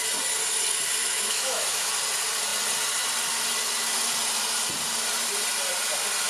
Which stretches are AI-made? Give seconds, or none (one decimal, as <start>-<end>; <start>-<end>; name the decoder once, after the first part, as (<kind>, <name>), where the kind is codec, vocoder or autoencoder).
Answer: 1.0-1.9 (autoencoder, DAC-VAE)